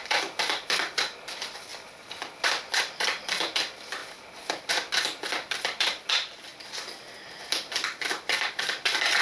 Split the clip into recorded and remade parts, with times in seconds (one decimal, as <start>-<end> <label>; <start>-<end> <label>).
0.0-1.7 remade; 1.7-2.7 recorded; 2.7-4.0 remade; 4.0-4.9 recorded; 4.9-6.5 remade; 6.5-8.2 recorded; 8.2-9.2 remade